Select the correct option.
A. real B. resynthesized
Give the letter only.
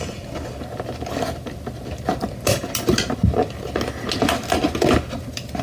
A